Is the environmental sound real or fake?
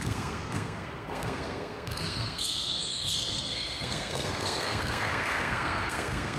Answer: fake